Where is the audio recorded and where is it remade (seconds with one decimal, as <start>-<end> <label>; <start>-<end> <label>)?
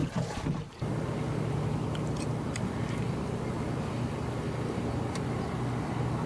0.0-3.8 remade; 3.8-6.3 recorded